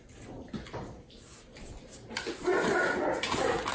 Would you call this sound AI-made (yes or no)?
no